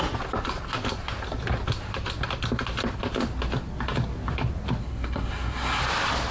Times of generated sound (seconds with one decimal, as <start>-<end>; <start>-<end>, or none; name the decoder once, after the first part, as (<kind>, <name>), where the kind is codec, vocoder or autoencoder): 4.8-5.8 (codec, SNAC)